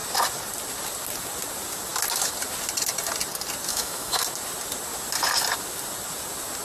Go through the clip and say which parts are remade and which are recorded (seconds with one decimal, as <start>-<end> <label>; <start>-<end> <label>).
0.0-3.7 recorded; 3.7-4.2 remade; 4.2-6.6 recorded